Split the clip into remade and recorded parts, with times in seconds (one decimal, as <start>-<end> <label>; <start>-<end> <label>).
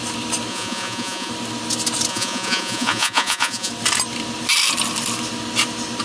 0.0-0.5 recorded; 0.5-1.3 remade; 1.3-2.1 recorded; 2.1-3.7 remade; 3.7-6.0 recorded